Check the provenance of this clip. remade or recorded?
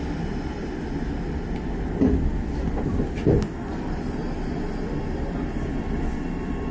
recorded